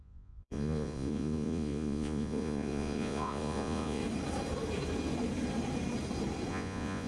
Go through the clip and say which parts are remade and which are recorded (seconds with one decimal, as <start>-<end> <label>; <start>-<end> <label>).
0.0-4.0 remade; 4.0-6.5 recorded; 6.5-7.1 remade